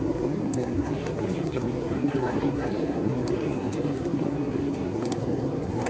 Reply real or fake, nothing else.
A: fake